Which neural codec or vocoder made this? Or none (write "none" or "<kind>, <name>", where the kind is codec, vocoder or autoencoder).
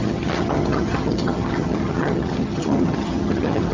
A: vocoder, HiFi-GAN